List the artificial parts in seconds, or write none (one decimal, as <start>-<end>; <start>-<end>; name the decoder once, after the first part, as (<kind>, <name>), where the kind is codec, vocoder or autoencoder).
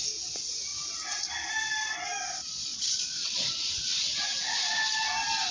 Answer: 2.4-3.5 (vocoder, Vocos)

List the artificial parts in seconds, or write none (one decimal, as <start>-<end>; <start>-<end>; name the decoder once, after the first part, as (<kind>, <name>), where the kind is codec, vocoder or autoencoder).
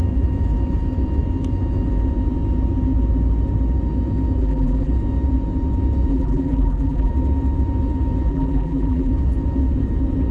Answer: 4.4-4.9 (vocoder, BigVGAN v2); 6.1-7.1; 8.3-9.1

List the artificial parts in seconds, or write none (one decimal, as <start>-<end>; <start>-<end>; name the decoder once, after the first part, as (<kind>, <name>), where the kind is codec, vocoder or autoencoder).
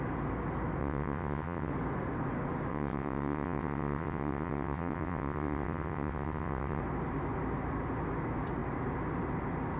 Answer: 0.8-1.7 (vocoder, WaveNeXt); 2.7-6.8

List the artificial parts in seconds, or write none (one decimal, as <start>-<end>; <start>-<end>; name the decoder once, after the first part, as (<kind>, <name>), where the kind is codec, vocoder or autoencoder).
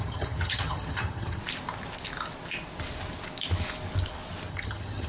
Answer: 0.0-1.4 (vocoder, HiFi-GAN); 4.5-5.1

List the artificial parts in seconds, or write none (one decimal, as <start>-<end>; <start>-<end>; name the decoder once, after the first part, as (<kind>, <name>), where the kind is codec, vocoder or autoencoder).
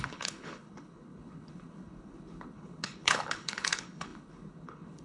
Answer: 0.0-5.0 (codec, HILCodec)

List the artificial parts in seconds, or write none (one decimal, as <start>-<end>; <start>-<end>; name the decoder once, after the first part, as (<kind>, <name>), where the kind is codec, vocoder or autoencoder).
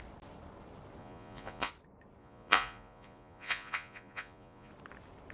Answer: 1.0-1.7 (vocoder, Vocos); 2.2-4.7